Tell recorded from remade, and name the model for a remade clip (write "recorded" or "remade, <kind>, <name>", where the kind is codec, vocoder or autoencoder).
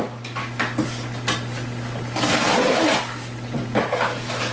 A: recorded